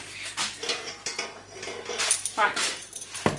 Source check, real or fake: real